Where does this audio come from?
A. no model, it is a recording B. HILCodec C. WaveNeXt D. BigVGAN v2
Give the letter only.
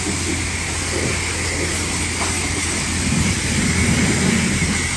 A